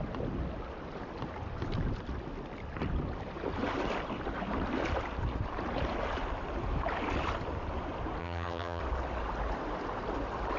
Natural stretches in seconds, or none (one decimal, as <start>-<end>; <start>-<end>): 0.0-8.2; 8.8-10.6

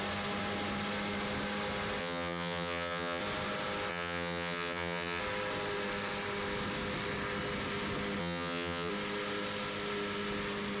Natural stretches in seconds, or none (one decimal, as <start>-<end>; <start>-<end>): 0.0-2.0; 3.2-3.9; 5.2-8.2; 8.9-10.8

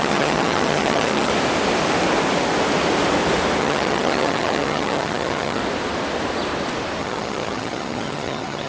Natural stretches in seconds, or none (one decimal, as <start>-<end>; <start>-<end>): 1.3-3.6; 5.6-7.0

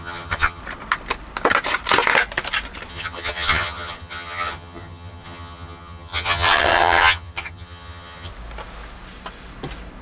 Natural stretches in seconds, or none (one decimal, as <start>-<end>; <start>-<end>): 0.6-2.9; 8.3-10.0

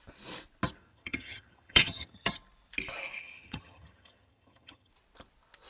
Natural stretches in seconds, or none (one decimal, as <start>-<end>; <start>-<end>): 0.0-0.8; 2.3-3.2; 4.9-5.7

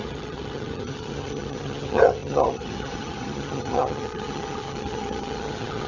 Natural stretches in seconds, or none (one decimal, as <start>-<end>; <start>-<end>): none

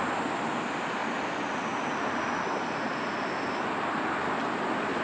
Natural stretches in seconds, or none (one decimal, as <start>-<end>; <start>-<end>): 0.0-5.0